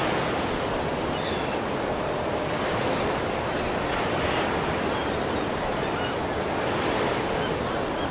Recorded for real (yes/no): yes